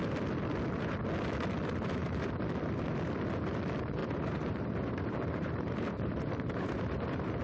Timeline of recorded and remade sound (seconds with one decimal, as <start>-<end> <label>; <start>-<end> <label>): 0.0-4.0 recorded; 4.0-7.4 remade